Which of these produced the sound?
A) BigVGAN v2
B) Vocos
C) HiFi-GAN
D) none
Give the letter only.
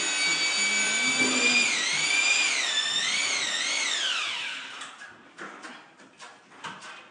D